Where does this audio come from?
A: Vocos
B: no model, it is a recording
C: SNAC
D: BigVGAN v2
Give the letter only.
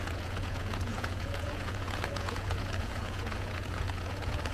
A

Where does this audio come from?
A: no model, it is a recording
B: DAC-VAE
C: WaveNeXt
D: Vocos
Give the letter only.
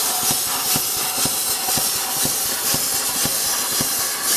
A